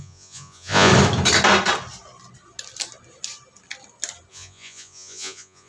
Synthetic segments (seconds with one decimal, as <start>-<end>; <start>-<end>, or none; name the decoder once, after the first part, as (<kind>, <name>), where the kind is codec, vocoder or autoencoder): 0.0-0.9 (vocoder, Vocos); 4.3-5.7